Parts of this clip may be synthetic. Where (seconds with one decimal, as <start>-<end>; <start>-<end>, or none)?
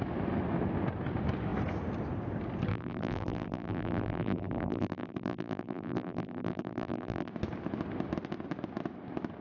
2.7-7.3